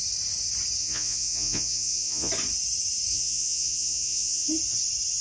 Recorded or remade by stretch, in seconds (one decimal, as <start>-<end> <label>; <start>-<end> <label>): 0.0-0.8 recorded; 0.8-2.3 remade; 2.3-3.1 recorded; 3.1-4.5 remade; 4.5-5.2 recorded